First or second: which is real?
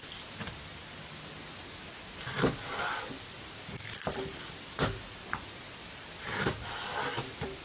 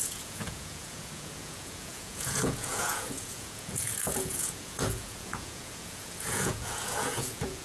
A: first